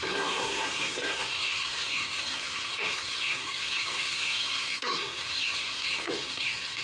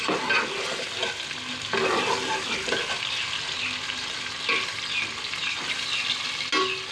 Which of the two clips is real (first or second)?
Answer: second